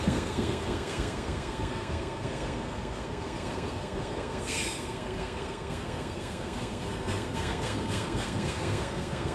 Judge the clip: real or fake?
fake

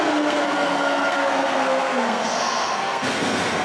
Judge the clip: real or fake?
fake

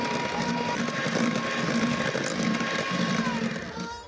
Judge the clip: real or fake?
real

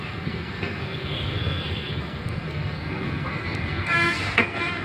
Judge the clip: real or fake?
fake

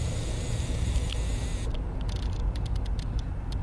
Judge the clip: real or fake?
real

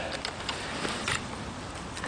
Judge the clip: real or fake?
real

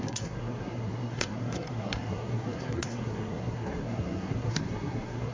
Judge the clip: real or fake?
fake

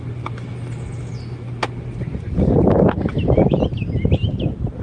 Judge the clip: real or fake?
real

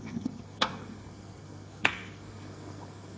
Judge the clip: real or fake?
fake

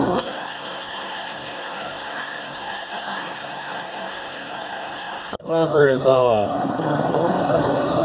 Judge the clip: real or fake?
fake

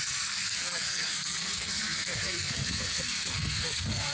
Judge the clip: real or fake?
fake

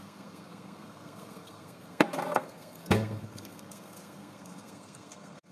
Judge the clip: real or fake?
fake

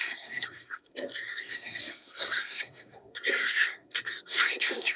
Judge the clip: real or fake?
fake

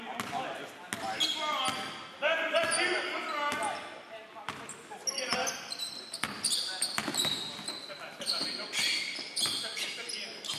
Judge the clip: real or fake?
real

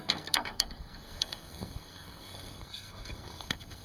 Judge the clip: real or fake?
fake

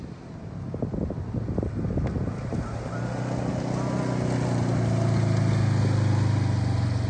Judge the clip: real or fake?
real